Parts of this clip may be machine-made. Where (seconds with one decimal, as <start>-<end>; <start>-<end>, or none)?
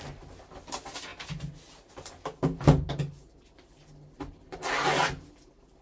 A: none